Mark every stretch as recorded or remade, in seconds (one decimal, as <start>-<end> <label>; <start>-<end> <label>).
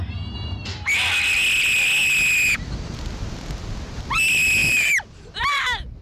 0.0-4.6 recorded; 4.6-5.4 remade; 5.4-6.0 recorded